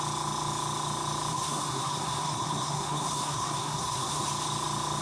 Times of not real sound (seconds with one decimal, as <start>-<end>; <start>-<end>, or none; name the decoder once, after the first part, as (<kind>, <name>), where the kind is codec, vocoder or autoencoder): 1.3-4.3 (codec, SNAC)